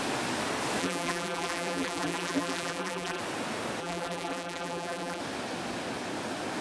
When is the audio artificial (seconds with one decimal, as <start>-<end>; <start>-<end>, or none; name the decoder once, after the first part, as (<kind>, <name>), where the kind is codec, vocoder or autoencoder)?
0.8-3.2 (vocoder, BigVGAN v2); 3.8-5.2